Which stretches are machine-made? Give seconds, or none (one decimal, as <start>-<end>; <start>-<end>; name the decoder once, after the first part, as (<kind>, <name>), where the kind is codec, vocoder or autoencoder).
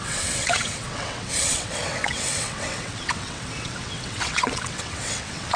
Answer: 0.0-5.6 (vocoder, WaveNeXt)